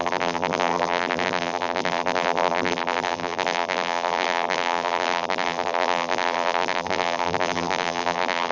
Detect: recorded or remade remade